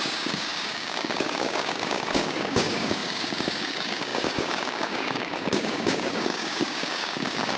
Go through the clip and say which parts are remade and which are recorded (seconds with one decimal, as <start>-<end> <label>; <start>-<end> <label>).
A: 0.0-7.6 remade